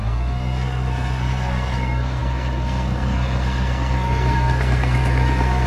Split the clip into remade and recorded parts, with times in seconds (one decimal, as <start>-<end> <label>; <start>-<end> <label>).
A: 0.0-5.7 remade